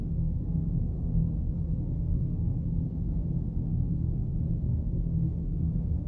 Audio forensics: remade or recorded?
remade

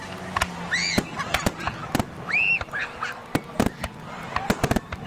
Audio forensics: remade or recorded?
recorded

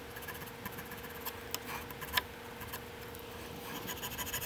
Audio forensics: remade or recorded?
recorded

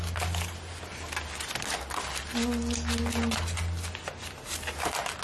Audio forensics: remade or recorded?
recorded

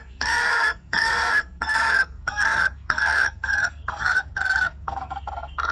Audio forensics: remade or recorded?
remade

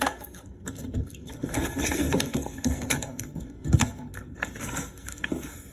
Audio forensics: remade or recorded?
remade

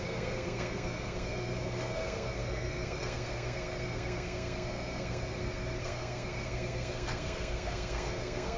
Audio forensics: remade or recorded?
remade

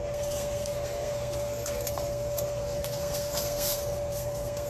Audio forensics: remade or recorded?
remade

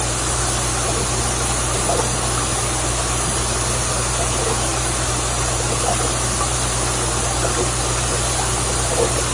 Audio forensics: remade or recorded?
recorded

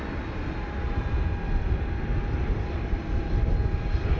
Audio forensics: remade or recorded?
recorded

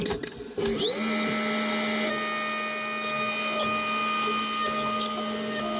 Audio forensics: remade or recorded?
recorded